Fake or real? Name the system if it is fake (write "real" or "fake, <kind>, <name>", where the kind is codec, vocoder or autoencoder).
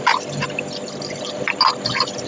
real